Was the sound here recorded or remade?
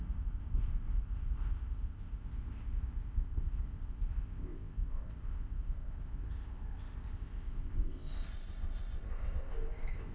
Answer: remade